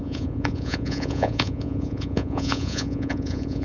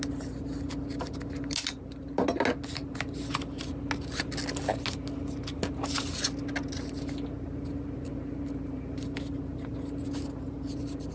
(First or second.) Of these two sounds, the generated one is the first